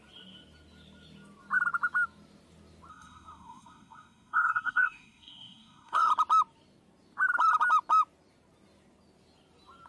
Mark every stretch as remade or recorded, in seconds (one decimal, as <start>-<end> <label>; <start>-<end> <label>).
0.0-2.9 recorded; 2.9-6.1 remade; 6.1-9.9 recorded